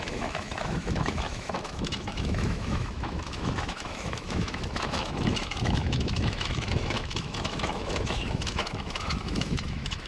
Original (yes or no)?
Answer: no